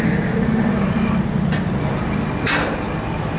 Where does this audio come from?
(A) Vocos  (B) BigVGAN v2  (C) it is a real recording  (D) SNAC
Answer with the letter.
C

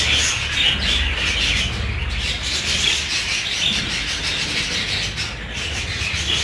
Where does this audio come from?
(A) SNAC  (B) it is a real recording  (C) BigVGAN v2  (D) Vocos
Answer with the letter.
B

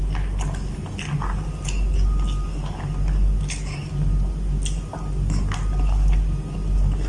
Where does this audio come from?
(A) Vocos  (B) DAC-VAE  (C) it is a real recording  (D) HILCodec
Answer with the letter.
C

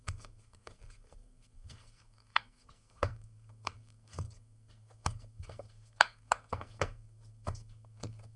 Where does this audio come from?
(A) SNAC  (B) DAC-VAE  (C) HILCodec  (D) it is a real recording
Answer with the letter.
A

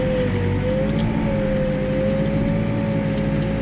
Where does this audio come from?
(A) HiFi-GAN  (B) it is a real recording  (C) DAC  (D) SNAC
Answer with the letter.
B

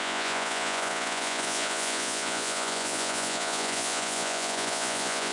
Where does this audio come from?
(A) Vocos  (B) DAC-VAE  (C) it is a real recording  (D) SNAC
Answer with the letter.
A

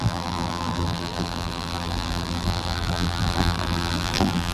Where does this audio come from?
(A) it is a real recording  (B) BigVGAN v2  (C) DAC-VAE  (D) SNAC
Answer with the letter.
B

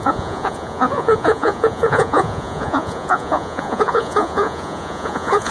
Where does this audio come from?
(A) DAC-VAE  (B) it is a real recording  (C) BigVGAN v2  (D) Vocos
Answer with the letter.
D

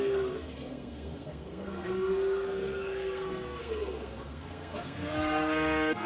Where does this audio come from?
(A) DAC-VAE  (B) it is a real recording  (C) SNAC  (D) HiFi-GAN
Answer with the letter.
C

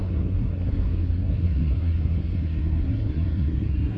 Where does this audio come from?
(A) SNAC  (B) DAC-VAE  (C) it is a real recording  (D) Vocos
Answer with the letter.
A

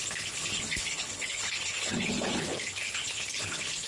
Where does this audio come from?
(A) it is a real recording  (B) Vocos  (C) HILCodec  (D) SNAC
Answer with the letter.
C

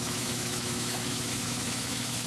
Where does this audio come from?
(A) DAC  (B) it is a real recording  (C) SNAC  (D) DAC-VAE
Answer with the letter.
D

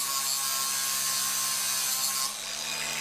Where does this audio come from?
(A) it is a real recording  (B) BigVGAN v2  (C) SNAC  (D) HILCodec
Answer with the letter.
A